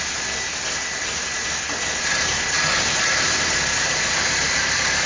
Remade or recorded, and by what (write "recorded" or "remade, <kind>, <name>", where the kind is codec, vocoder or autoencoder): recorded